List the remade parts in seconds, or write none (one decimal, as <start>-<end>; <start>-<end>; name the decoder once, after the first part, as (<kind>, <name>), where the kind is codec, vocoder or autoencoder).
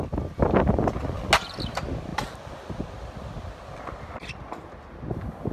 none